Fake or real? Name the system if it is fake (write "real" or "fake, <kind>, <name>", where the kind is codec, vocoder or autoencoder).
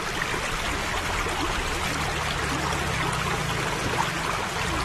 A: real